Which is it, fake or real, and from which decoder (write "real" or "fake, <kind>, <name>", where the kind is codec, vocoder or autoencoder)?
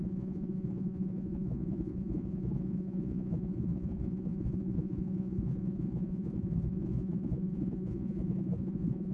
fake, vocoder, Vocos